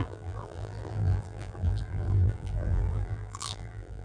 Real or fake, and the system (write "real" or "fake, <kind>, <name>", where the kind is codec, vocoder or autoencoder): fake, vocoder, BigVGAN v2